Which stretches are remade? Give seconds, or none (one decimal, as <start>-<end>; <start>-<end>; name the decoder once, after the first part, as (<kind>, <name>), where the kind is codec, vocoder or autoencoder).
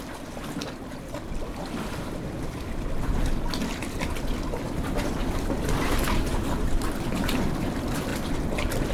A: none